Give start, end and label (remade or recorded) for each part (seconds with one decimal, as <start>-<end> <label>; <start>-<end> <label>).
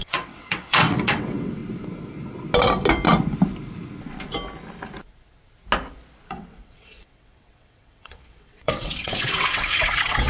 0.0-1.6 remade; 1.6-6.3 recorded; 6.3-10.3 remade